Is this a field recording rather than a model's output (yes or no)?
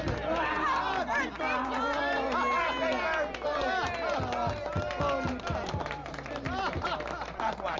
yes